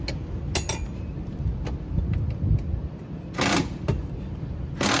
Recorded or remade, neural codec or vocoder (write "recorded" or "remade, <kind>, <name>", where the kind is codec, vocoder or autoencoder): recorded